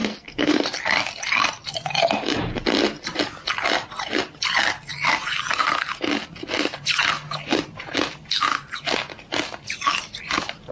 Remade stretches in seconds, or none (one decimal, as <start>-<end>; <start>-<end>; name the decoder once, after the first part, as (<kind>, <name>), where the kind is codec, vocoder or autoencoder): 0.0-0.6 (codec, SNAC)